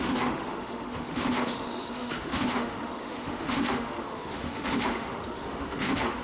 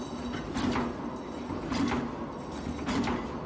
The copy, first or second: first